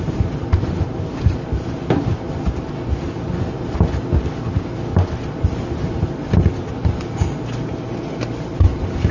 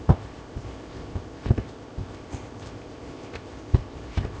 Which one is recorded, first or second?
first